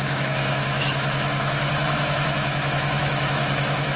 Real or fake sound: fake